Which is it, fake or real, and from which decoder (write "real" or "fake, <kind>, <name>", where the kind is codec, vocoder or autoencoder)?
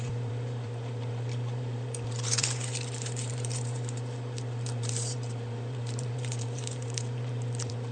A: fake, vocoder, BigVGAN v2